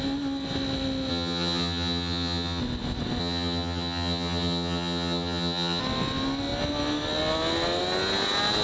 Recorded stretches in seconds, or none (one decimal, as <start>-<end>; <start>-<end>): 0.0-1.1; 2.6-3.2; 5.8-8.6